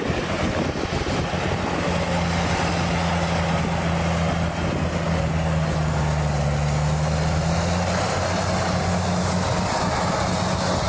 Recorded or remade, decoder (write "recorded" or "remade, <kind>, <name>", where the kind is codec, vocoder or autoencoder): recorded